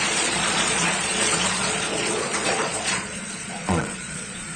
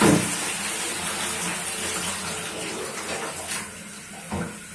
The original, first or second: second